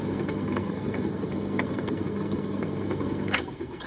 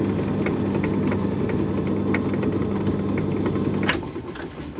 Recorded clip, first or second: second